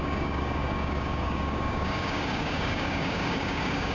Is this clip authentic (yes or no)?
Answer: no